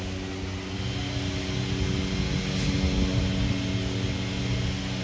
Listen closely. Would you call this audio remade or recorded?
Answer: recorded